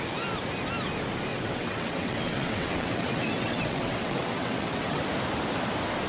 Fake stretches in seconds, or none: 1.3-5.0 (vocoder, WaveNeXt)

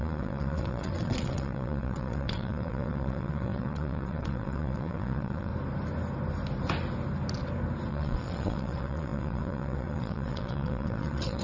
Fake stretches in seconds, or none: 0.0-5.5 (vocoder, WaveNeXt); 7.9-11.4

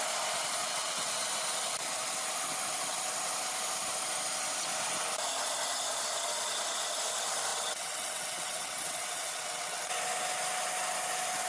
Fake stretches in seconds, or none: 0.6-1.1 (vocoder, WaveNeXt); 7.5-9.9

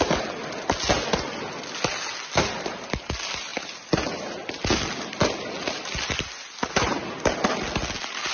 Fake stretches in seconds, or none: none

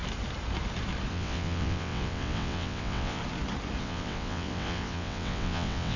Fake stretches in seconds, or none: 1.1-3.2 (vocoder, WaveNeXt); 3.8-6.0

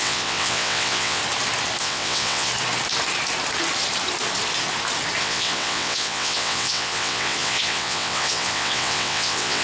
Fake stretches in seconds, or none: 0.0-1.2 (vocoder, WaveNeXt); 1.8-2.5; 5.2-9.6

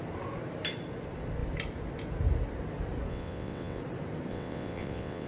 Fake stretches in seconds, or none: 3.1-3.8 (vocoder, WaveNeXt); 4.3-5.3

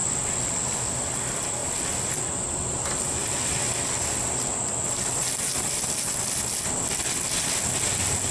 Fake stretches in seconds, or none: none